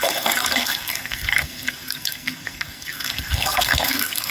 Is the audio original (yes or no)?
no